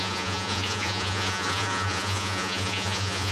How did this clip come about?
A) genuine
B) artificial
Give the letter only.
B